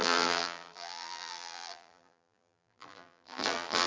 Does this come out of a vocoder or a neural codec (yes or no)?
yes